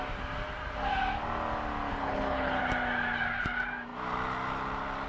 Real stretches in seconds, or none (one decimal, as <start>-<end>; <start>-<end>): 0.0-1.9; 2.6-5.1